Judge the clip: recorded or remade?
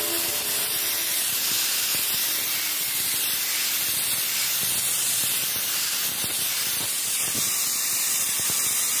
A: recorded